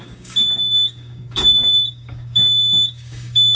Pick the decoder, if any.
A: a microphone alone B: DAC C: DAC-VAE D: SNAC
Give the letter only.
B